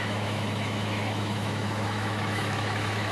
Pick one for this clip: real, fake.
fake